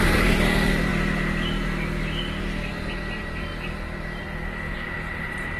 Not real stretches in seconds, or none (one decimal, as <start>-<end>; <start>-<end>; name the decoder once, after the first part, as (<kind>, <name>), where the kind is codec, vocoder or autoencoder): 0.0-0.9 (vocoder, BigVGAN v2); 2.7-3.5; 4.7-5.6